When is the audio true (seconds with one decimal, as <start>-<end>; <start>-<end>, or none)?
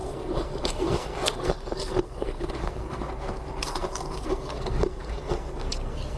none